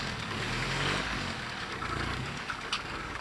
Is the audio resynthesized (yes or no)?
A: yes